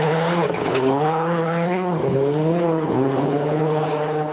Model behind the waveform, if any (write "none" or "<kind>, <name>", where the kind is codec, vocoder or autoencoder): codec, HILCodec